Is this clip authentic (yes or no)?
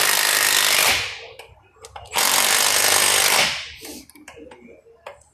yes